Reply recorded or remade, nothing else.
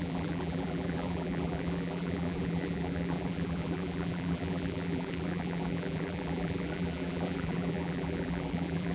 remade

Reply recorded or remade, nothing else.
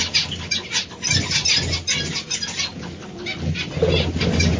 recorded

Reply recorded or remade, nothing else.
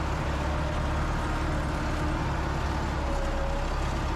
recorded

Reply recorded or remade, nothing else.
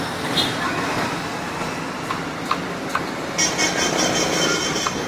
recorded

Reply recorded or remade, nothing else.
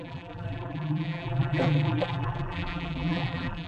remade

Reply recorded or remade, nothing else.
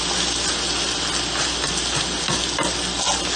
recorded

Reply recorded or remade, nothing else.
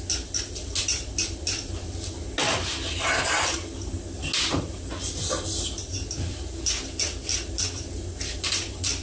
recorded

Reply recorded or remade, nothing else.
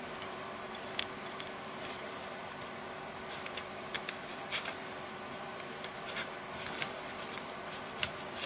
remade